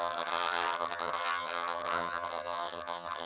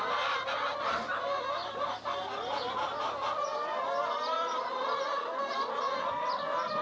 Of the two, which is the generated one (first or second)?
first